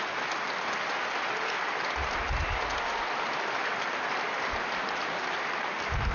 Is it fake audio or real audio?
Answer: real